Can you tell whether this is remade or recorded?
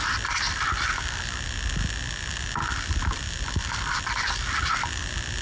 recorded